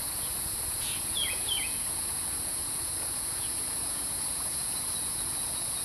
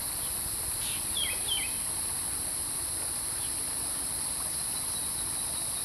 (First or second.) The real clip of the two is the second